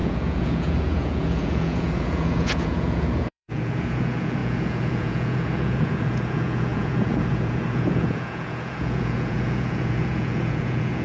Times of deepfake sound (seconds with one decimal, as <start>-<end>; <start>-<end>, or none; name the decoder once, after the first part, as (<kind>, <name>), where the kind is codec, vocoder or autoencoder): 0.0-11.0 (vocoder, Vocos)